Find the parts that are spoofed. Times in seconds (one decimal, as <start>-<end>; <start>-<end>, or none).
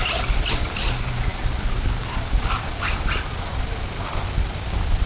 none